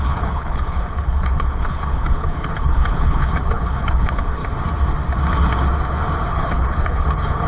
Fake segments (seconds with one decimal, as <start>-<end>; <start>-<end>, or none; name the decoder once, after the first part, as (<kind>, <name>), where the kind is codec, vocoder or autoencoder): 0.0-4.4 (codec, HILCodec); 6.3-7.5